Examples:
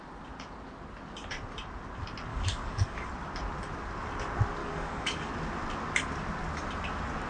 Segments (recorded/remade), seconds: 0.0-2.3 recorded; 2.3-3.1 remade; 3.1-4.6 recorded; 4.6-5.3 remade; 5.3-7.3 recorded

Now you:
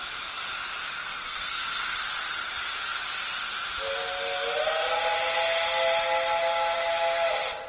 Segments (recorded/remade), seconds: 0.0-0.8 recorded; 0.8-2.0 remade; 2.0-7.7 recorded

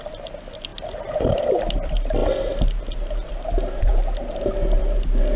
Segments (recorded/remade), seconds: 0.0-5.4 recorded

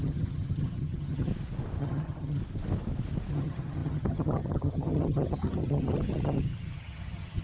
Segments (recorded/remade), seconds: 0.0-1.3 remade; 1.3-1.8 recorded; 1.8-2.4 remade; 2.4-3.3 recorded; 3.3-7.4 remade

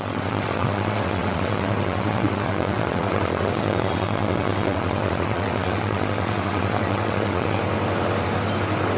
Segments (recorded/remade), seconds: 0.0-7.6 remade; 7.6-9.0 recorded

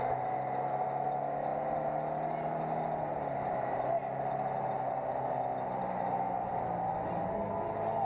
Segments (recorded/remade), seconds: 0.0-8.0 recorded

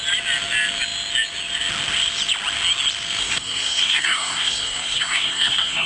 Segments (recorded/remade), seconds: 0.0-3.2 recorded; 3.2-5.9 remade